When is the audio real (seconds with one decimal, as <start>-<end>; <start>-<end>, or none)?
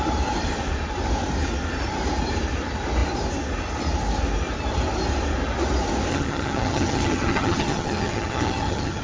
0.0-6.1